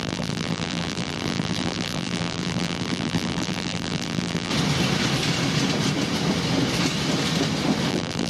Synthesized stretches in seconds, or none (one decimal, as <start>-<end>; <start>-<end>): 0.0-4.5; 7.9-8.3